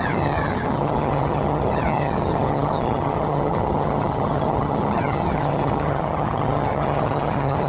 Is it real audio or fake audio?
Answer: fake